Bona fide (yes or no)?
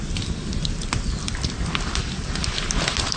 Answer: yes